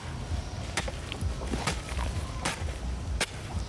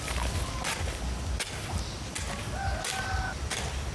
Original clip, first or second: second